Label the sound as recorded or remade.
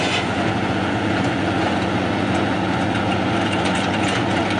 remade